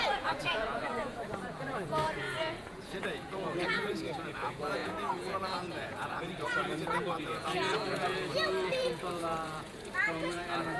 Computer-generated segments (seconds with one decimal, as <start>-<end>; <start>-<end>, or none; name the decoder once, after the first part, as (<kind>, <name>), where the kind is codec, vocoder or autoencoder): 0.0-10.8 (vocoder, Vocos)